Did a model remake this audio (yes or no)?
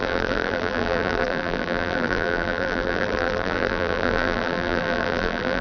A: yes